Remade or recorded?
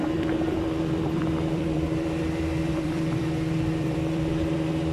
remade